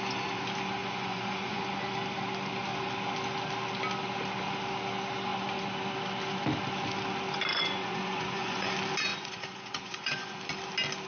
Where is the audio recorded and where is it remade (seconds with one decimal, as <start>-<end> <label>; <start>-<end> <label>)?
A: 0.0-0.8 recorded; 0.8-1.6 remade; 1.6-7.5 recorded; 7.5-8.7 remade; 8.7-9.1 recorded; 9.1-10.4 remade; 10.4-11.1 recorded